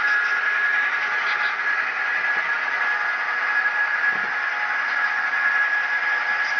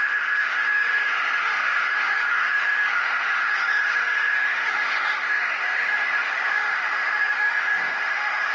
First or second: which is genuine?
first